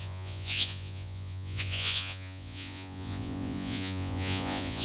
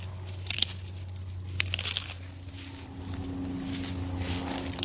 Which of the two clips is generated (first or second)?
first